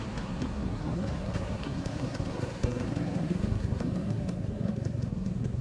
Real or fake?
fake